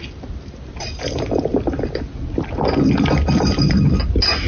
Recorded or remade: recorded